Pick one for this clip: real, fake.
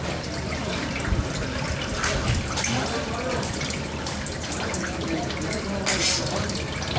real